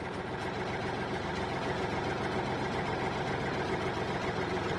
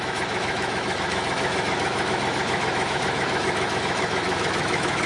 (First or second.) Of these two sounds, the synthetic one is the second